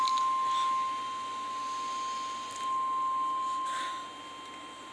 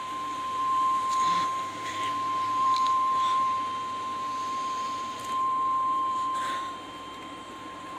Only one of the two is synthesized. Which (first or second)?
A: second